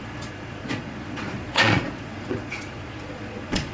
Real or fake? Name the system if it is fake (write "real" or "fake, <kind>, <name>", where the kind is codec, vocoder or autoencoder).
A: fake, vocoder, Vocos